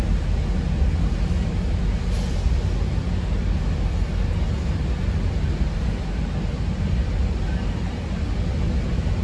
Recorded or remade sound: recorded